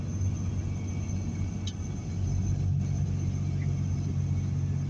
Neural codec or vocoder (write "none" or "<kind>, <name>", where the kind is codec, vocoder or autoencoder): none